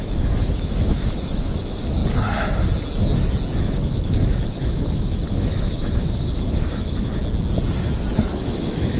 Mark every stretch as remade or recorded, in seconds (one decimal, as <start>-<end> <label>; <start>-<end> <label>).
0.0-2.0 remade; 2.0-3.6 recorded; 3.6-7.2 remade; 7.2-8.2 recorded; 8.2-9.0 remade